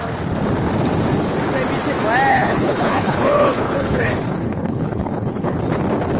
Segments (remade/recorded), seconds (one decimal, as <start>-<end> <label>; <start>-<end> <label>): 0.0-2.3 recorded; 2.3-5.6 remade; 5.6-6.2 recorded

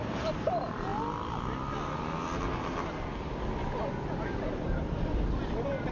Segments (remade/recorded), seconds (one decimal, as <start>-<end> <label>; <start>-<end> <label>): 0.0-5.9 recorded